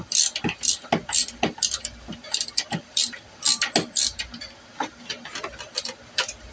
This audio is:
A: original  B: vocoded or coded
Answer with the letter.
A